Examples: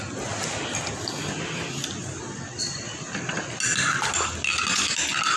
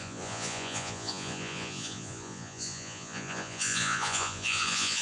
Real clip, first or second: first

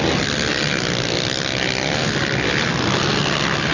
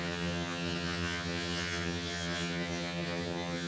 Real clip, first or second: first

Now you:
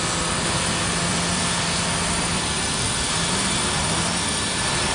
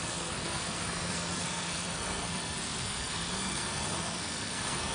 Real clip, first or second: first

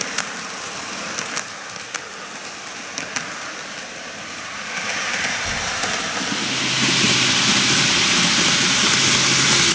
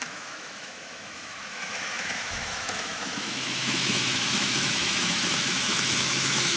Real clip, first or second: first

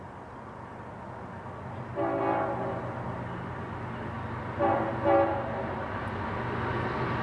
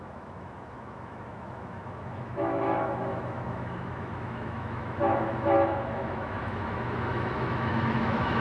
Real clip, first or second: first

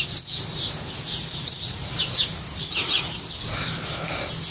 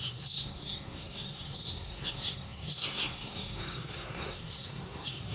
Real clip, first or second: first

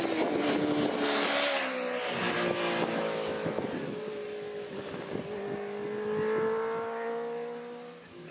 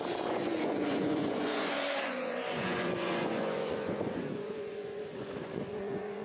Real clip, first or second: first